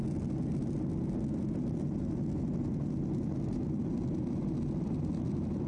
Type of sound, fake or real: real